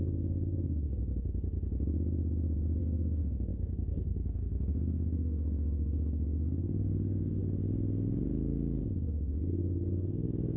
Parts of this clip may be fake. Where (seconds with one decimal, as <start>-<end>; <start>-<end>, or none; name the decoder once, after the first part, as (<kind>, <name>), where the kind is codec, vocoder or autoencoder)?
0.0-1.0 (codec, SNAC); 2.8-7.4; 9.1-10.6